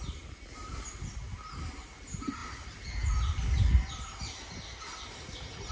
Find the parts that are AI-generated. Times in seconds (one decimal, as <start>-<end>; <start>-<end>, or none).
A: none